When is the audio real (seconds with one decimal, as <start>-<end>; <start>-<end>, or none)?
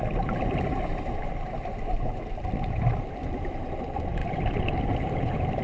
0.0-0.8; 1.7-2.5